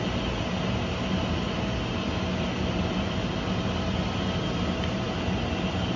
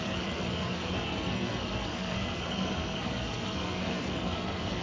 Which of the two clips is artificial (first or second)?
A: second